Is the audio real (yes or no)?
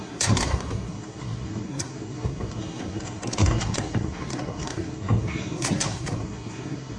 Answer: no